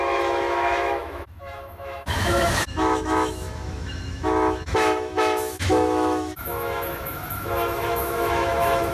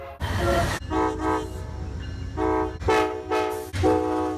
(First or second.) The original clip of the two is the second